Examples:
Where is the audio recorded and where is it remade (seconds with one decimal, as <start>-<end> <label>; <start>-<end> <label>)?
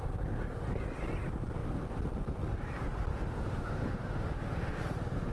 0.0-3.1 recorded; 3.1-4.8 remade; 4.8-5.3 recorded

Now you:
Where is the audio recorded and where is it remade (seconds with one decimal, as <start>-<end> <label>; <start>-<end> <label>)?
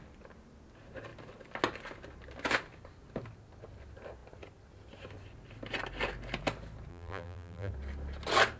0.0-6.9 recorded; 6.9-7.7 remade; 7.7-8.6 recorded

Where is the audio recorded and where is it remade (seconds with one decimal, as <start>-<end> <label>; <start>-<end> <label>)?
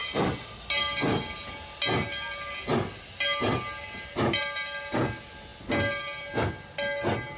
0.0-7.4 recorded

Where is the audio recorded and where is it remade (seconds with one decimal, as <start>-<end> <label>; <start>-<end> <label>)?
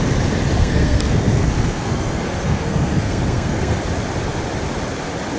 0.0-0.6 recorded; 0.6-3.8 remade; 3.8-5.4 recorded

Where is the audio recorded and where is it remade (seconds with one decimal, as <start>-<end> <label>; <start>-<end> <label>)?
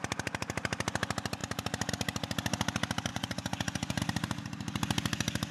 0.0-3.1 recorded; 3.1-4.0 remade; 4.0-5.5 recorded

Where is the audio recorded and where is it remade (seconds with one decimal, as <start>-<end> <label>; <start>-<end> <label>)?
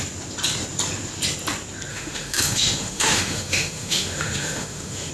0.0-1.9 recorded; 1.9-5.1 remade